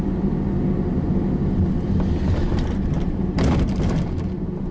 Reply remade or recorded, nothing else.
recorded